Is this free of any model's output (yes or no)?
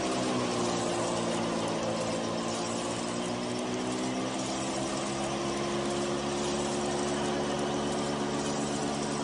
yes